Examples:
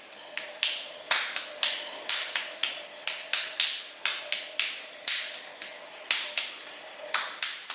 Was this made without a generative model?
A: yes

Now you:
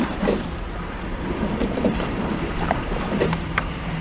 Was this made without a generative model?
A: no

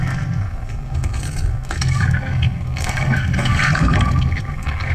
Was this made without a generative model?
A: no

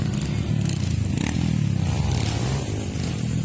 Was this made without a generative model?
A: yes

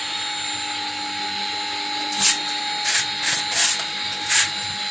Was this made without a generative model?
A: yes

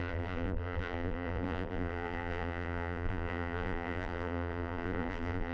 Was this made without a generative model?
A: no